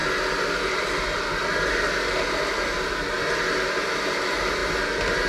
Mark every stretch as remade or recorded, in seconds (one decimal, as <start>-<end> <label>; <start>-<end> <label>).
0.0-5.3 recorded